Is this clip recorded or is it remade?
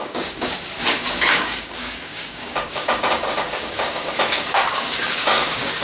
remade